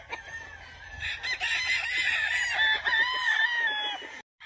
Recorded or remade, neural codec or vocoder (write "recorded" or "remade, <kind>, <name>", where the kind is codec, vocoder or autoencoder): recorded